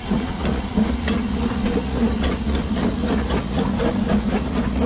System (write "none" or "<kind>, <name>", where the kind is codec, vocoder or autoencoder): vocoder, Vocos